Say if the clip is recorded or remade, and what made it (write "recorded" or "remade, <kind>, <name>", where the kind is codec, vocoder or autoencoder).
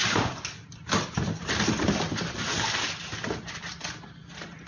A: remade, vocoder, BigVGAN v2